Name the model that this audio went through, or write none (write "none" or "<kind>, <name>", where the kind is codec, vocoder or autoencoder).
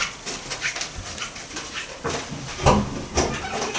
vocoder, BigVGAN v2